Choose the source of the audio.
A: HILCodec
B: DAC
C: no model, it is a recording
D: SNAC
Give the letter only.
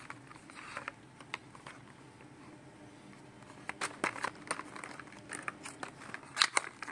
C